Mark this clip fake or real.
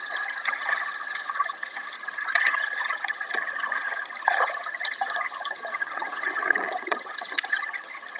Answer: fake